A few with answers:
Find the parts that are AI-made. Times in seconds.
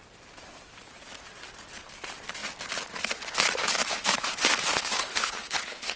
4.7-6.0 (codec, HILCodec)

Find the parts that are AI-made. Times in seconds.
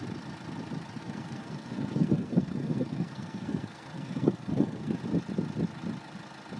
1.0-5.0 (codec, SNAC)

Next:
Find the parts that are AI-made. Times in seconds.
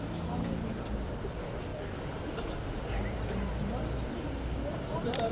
1.7-3.3 (vocoder, BigVGAN v2)